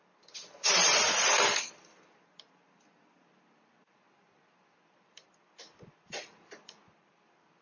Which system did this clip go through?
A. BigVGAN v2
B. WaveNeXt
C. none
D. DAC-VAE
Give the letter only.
A